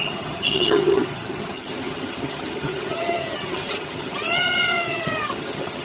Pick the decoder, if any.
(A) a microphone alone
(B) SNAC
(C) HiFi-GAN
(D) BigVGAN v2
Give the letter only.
C